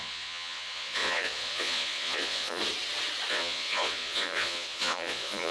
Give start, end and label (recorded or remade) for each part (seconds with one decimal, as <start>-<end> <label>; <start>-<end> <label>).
0.0-2.6 remade; 2.6-3.3 recorded; 3.3-5.5 remade